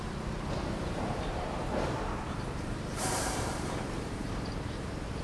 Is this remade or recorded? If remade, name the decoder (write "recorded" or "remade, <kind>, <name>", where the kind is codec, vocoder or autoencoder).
remade, vocoder, BigVGAN v2